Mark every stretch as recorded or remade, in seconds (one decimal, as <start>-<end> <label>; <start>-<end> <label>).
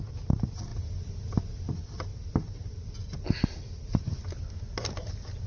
0.0-5.5 recorded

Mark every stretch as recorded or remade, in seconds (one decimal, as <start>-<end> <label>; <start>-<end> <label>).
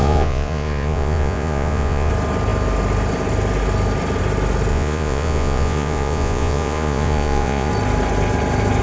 0.0-2.1 remade; 2.1-4.7 recorded; 4.7-7.7 remade; 7.7-8.8 recorded